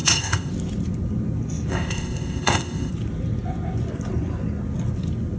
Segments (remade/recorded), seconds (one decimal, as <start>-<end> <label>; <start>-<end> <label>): 0.0-0.5 remade; 0.5-1.7 recorded; 1.7-2.9 remade; 2.9-5.4 recorded